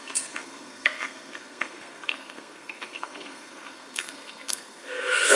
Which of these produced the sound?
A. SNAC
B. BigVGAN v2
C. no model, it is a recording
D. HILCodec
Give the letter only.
A